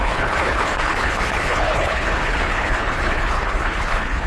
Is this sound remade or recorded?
remade